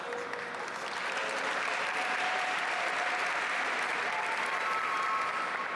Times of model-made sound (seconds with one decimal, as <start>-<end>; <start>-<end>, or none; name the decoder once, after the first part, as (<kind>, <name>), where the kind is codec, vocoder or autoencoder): 1.2-3.2 (vocoder, BigVGAN v2)